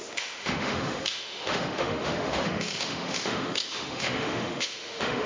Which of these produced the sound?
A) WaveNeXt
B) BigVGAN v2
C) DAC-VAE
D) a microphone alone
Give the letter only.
C